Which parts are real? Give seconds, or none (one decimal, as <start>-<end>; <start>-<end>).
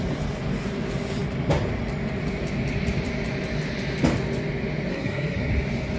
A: 0.0-4.9; 5.5-6.0